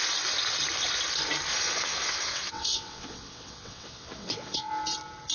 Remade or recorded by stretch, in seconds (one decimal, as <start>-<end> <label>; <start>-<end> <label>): 0.0-1.5 recorded; 1.5-4.7 remade; 4.7-5.3 recorded